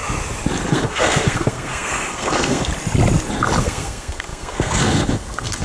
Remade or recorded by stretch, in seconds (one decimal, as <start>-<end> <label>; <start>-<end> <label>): 0.0-0.7 recorded; 0.7-2.7 remade; 2.7-3.6 recorded; 3.6-5.6 remade